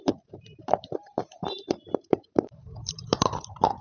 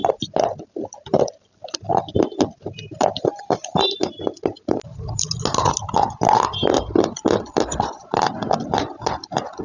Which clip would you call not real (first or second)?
first